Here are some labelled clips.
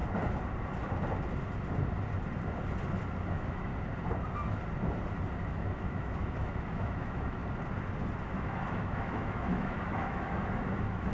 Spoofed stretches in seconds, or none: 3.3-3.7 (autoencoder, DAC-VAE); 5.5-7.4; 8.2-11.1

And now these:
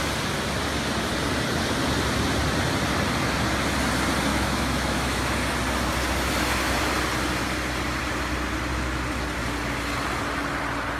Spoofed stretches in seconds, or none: 4.3-5.2 (autoencoder, DAC-VAE)

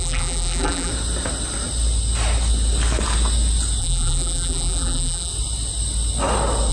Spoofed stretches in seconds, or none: 0.0-0.9 (vocoder, BigVGAN v2); 3.8-5.3

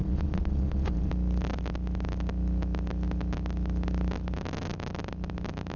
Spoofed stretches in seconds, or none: 0.0-1.1 (vocoder, Vocos)

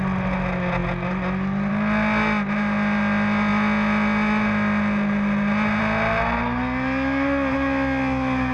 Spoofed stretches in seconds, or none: none

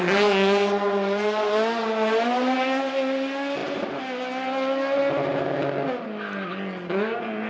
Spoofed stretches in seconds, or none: none